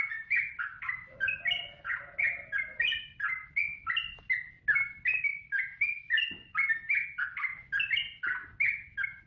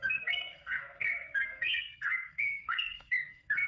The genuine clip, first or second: first